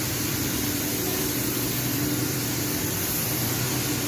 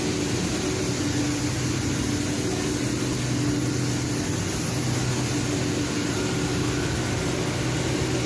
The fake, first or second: first